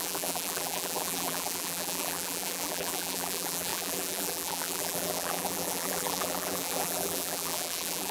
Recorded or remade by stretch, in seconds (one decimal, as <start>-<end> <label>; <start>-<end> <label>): 0.0-8.1 remade